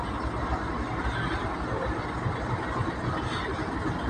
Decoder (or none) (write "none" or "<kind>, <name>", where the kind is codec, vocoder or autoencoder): none